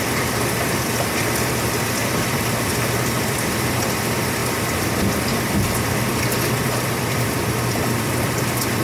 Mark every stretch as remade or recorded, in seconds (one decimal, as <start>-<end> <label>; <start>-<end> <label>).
0.0-8.8 remade